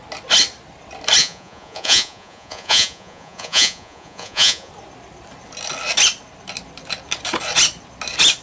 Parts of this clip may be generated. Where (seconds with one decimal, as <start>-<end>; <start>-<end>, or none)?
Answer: 1.2-4.7